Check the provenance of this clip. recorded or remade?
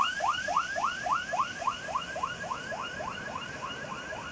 recorded